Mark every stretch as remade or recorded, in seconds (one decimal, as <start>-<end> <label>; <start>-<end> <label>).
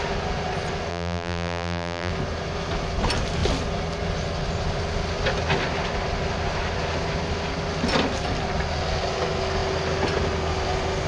0.0-0.9 recorded; 0.9-2.1 remade; 2.1-11.1 recorded